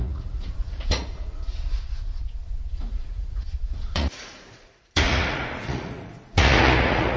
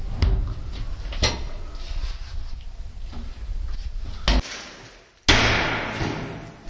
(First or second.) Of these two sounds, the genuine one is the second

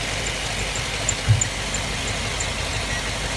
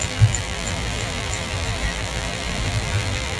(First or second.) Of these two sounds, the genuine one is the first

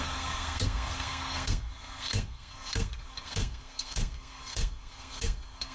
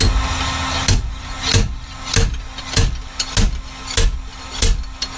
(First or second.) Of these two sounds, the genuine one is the second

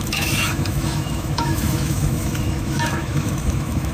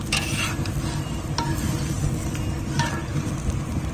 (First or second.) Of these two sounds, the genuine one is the second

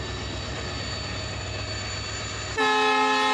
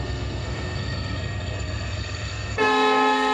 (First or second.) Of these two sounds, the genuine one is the first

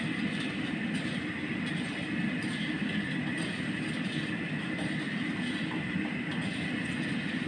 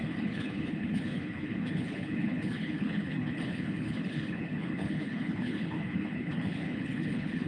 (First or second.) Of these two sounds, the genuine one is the first